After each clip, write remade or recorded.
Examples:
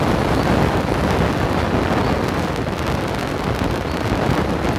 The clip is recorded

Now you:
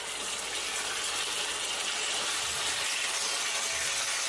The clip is recorded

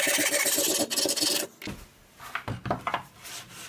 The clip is recorded